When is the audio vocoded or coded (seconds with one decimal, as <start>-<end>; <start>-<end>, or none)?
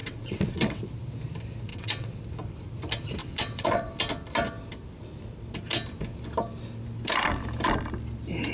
0.0-0.8; 1.7-2.2; 3.2-3.9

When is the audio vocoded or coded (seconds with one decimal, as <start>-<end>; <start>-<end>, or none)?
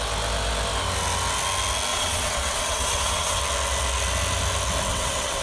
1.9-3.4; 4.9-5.4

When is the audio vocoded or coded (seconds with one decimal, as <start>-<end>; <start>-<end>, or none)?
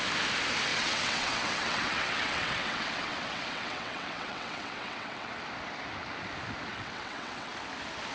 0.7-5.3; 6.7-7.5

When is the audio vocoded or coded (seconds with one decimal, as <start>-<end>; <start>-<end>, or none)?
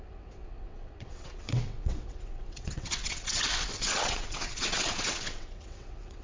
0.0-6.2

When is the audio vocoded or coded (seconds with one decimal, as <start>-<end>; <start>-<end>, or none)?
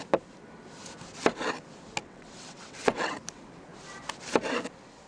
2.0-3.2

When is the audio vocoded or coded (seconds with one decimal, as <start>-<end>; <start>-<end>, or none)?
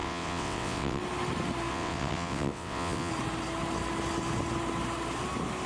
0.0-1.0; 1.7-3.1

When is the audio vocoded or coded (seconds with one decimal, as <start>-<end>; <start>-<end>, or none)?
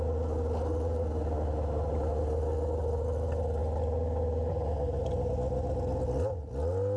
none